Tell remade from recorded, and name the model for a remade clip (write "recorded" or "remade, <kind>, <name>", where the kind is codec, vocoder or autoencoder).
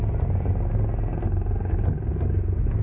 recorded